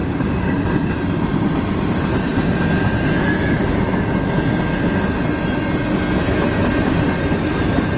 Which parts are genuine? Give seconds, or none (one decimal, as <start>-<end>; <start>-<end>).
2.3-6.7